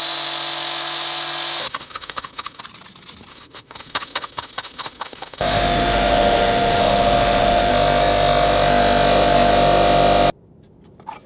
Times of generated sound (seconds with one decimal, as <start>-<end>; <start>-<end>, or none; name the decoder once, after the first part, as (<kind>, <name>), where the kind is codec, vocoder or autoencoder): 1.6-2.6 (autoencoder, DAC-VAE); 3.3-7.7